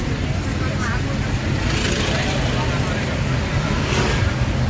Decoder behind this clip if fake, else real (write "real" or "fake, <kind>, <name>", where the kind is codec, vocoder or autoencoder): real